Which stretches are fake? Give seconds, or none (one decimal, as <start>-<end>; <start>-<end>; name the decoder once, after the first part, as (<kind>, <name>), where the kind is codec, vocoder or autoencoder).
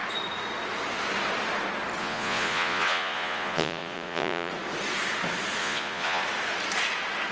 2.0-4.5 (vocoder, Vocos); 5.6-6.2